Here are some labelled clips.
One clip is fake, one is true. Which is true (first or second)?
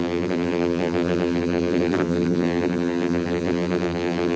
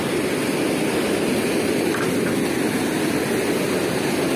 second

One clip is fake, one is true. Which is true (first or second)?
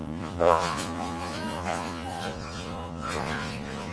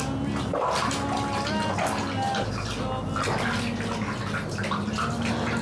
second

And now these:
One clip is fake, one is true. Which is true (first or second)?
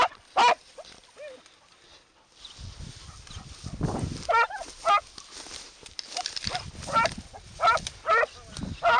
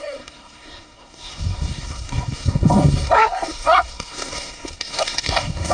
first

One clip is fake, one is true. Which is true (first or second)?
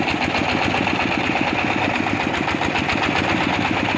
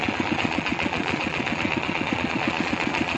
first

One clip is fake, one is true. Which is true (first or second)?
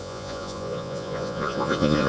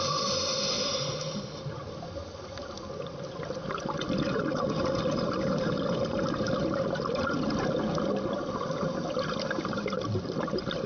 second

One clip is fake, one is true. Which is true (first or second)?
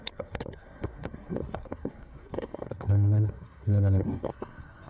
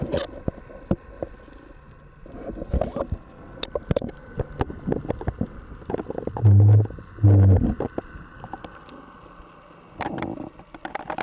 second